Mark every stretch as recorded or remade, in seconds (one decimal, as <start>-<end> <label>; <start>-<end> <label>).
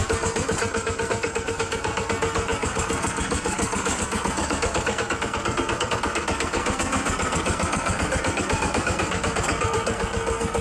0.0-10.6 remade